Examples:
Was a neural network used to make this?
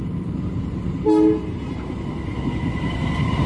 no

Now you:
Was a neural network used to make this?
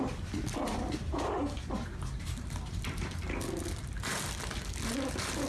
no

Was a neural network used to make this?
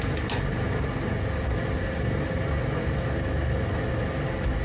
no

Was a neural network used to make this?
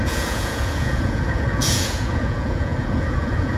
yes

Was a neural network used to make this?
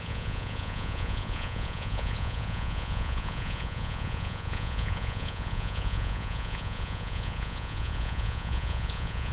yes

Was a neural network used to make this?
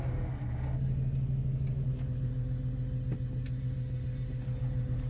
no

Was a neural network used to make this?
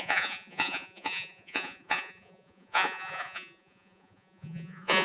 yes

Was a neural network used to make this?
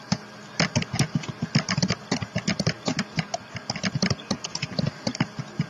no